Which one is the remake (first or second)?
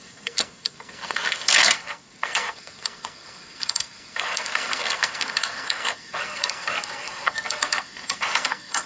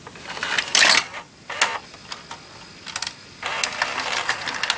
first